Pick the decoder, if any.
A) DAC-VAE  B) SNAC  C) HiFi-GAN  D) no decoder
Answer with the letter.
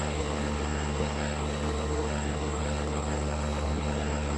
B